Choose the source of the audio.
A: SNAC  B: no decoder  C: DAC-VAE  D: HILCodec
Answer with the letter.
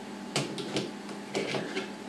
B